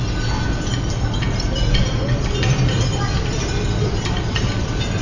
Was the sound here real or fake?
real